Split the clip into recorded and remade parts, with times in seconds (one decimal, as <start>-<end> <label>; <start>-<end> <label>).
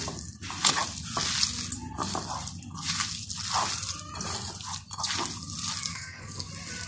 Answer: 0.0-5.9 recorded; 5.9-6.5 remade; 6.5-6.9 recorded